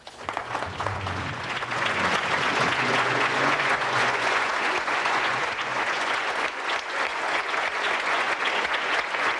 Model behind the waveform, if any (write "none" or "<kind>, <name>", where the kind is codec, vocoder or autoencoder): vocoder, Vocos